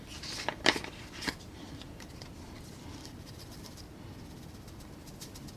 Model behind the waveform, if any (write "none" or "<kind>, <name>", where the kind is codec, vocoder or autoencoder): vocoder, BigVGAN v2